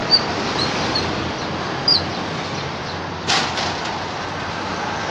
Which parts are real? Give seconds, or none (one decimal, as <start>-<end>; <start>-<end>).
1.2-5.1